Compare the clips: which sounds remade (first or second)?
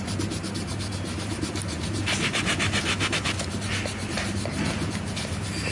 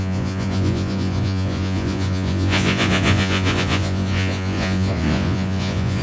second